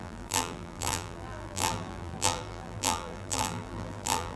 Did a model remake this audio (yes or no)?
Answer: yes